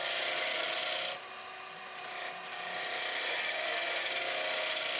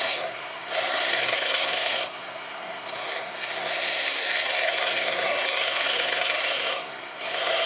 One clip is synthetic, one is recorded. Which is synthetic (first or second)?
second